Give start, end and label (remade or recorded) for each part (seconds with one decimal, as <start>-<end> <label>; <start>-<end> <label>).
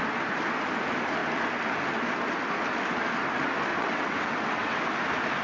0.0-3.7 recorded; 3.7-4.8 remade; 4.8-5.4 recorded